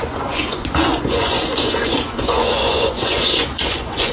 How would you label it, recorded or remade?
remade